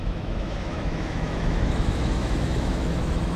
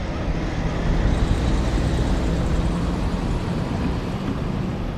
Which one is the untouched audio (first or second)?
second